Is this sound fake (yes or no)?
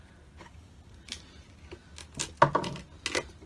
no